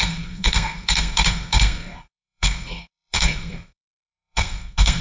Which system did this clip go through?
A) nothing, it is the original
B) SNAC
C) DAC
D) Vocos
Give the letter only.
B